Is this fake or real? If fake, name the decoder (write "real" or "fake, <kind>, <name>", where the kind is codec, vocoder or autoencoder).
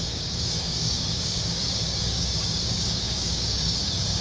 fake, codec, DAC